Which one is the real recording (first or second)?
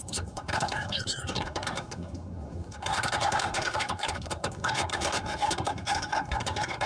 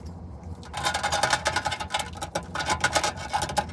second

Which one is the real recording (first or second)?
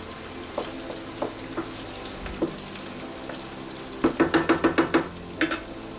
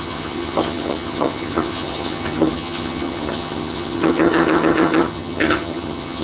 first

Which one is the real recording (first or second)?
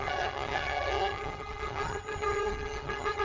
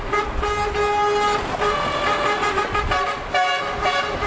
second